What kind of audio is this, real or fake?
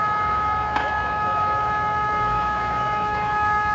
fake